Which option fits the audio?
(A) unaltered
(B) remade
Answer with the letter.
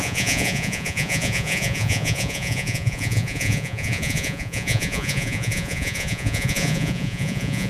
B